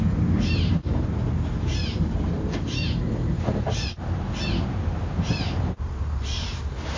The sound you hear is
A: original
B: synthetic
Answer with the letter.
B